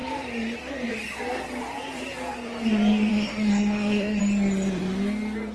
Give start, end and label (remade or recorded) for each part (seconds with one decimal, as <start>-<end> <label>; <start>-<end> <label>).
0.0-3.1 recorded; 3.1-4.2 remade; 4.2-5.5 recorded